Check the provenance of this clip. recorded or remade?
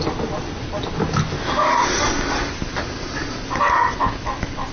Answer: recorded